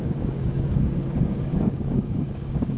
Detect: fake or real fake